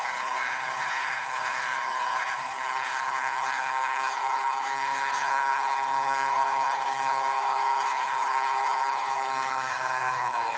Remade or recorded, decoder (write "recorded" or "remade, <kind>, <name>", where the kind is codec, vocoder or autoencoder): remade, codec, HILCodec